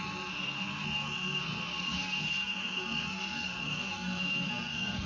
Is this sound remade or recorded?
remade